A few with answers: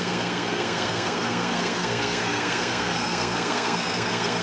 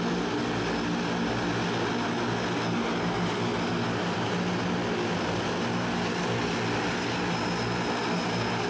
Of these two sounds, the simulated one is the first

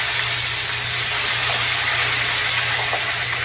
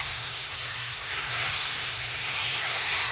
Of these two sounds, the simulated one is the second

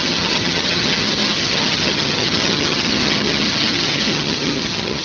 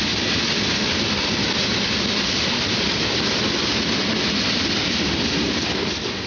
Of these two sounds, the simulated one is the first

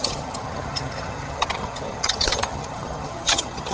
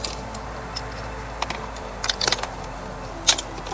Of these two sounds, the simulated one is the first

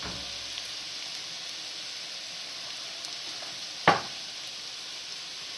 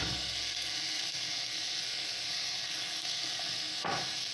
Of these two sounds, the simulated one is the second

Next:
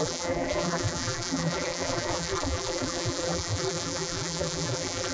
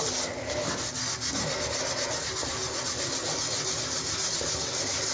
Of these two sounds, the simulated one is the first